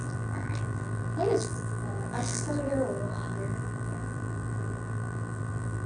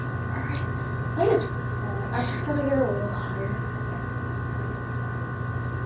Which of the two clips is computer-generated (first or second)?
first